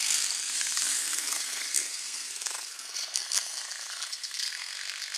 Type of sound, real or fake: fake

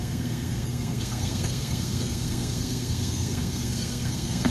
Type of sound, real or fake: fake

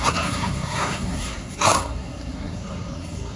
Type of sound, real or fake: fake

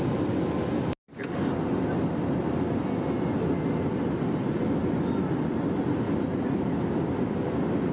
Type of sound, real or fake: real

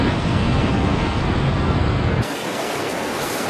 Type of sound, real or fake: fake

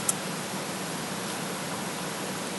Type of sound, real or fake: real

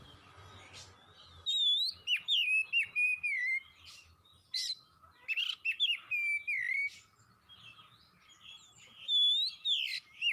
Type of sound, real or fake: real